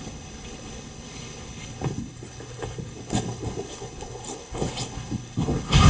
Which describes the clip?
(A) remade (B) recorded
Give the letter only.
A